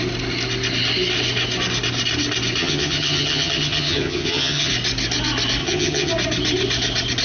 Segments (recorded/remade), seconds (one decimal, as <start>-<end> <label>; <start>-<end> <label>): 0.0-2.6 recorded; 2.6-4.7 remade; 4.7-5.6 recorded; 5.6-6.1 remade; 6.1-7.2 recorded